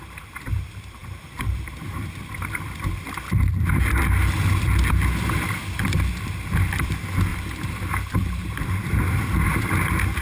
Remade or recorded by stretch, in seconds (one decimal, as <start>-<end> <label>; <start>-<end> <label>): 0.0-10.2 remade

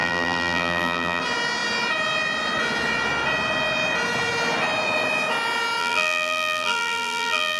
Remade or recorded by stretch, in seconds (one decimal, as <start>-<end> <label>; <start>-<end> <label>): 0.0-1.2 remade; 1.2-5.8 recorded; 5.8-7.6 remade

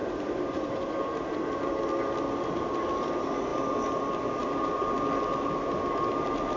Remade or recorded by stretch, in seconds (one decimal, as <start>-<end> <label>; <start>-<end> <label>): 0.0-1.8 remade; 1.8-4.4 recorded; 4.4-5.0 remade; 5.0-6.6 recorded

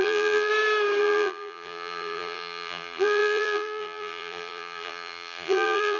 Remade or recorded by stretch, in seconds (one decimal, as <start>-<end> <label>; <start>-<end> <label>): 0.0-0.5 remade; 0.5-1.0 recorded; 1.0-6.0 remade

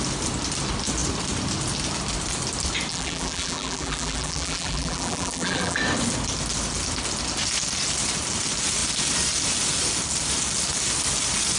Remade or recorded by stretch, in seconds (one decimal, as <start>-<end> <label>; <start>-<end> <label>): 0.0-2.9 recorded; 2.9-5.8 remade; 5.8-11.6 recorded